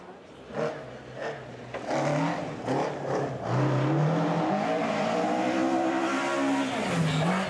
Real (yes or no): yes